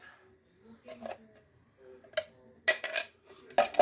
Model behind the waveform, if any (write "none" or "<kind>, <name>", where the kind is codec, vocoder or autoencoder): none